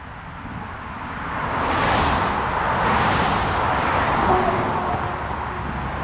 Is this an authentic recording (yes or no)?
yes